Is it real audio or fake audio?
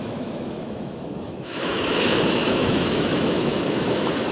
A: fake